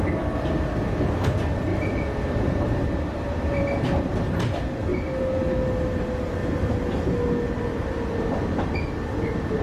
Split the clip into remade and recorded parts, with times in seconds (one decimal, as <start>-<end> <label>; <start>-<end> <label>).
0.0-1.7 recorded; 1.7-3.6 remade; 3.6-4.9 recorded; 4.9-5.4 remade; 5.4-9.6 recorded